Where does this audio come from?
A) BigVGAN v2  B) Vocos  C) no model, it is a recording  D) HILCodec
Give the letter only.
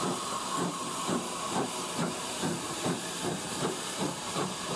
A